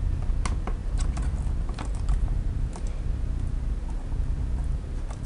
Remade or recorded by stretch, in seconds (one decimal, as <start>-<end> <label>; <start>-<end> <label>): 0.0-5.3 recorded